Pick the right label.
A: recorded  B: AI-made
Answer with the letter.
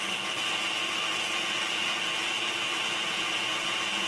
A